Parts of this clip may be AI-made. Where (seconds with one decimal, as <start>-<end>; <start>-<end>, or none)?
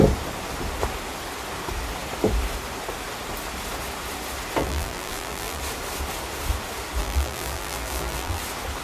4.6-5.6; 7.0-8.4